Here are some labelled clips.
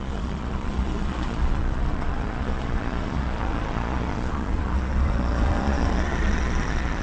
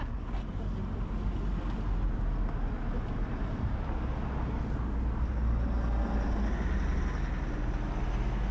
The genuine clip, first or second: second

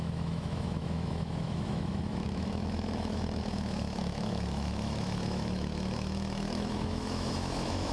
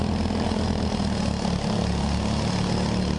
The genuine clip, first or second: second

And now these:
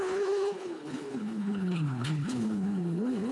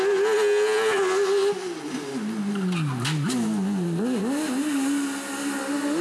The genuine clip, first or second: second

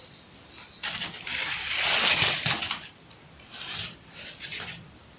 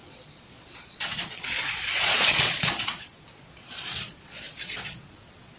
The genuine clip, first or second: first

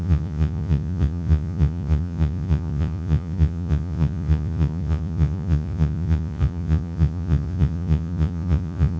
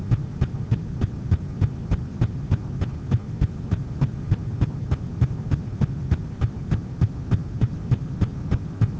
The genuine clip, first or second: second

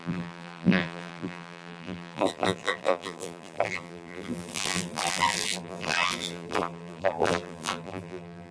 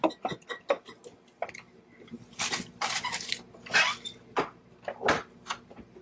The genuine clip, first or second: second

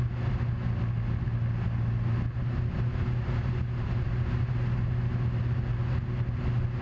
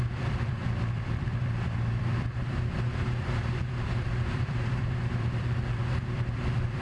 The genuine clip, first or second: first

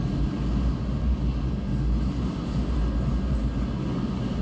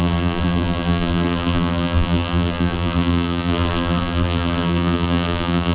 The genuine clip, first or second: first